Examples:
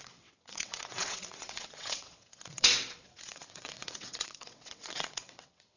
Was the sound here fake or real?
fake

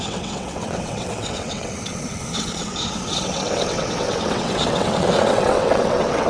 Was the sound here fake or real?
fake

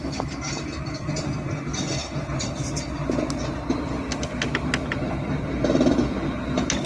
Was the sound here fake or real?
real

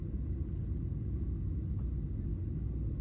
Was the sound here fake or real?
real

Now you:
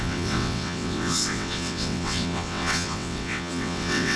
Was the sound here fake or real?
fake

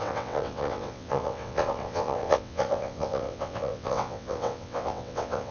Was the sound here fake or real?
fake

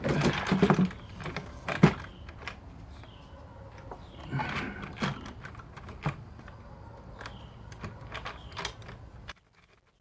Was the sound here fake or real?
real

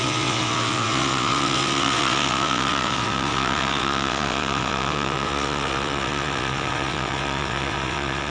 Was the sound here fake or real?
fake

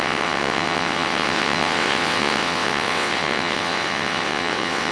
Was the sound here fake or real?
fake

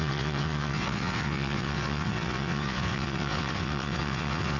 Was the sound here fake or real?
fake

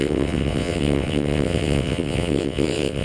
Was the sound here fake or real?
fake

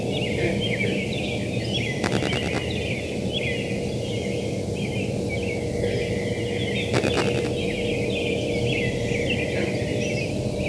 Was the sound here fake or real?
real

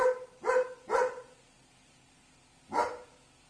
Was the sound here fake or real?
real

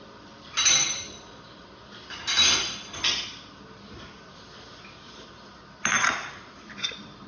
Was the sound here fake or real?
real